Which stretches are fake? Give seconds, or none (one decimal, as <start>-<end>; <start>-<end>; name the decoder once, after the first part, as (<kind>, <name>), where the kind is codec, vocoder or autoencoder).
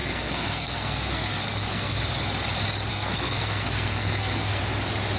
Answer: 0.0-2.0 (codec, SNAC); 2.9-4.6